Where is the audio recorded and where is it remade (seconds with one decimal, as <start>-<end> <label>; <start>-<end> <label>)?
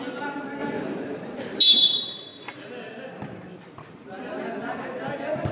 0.0-0.6 recorded; 0.6-1.6 remade; 1.6-3.5 recorded; 3.5-4.4 remade; 4.4-5.5 recorded